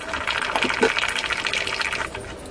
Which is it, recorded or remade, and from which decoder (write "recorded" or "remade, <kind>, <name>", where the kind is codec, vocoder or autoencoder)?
recorded